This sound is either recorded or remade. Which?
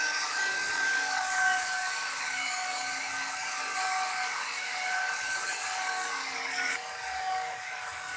remade